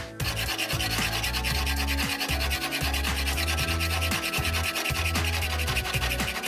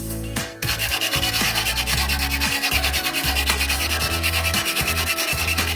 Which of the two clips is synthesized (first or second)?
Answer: second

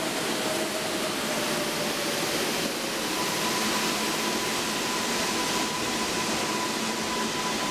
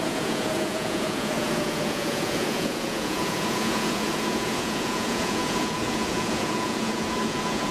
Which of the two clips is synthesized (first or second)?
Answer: second